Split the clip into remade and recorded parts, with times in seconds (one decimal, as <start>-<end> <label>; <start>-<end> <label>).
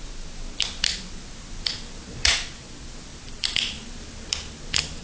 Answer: 0.0-5.0 recorded